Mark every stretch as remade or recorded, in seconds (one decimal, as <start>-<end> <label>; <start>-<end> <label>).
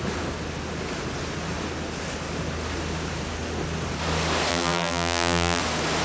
0.0-4.5 recorded; 4.5-5.6 remade; 5.6-6.0 recorded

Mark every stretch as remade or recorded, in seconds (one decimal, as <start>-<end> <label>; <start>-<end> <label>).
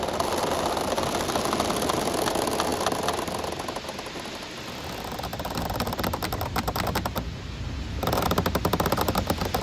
0.0-9.6 recorded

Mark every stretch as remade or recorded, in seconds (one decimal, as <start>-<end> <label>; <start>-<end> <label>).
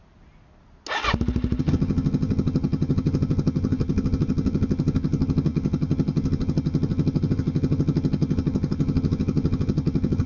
0.0-1.6 recorded; 1.6-10.3 remade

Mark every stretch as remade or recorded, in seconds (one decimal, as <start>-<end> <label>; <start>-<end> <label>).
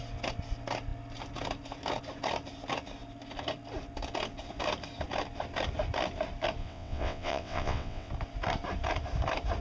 0.0-6.6 recorded; 6.6-8.1 remade; 8.1-9.6 recorded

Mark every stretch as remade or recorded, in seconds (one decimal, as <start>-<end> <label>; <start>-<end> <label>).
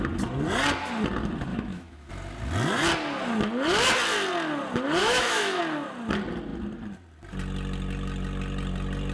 0.0-1.5 recorded; 1.5-2.1 remade; 2.1-5.0 recorded; 5.0-5.6 remade; 5.6-9.1 recorded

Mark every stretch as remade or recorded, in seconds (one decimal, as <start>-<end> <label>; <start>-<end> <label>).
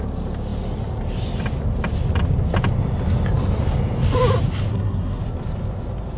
0.0-4.7 recorded; 4.7-5.2 remade; 5.2-6.2 recorded